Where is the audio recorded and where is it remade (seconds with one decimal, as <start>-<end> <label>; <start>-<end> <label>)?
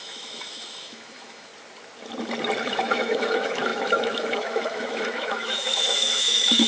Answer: 0.0-1.5 remade; 1.5-2.6 recorded; 2.6-6.7 remade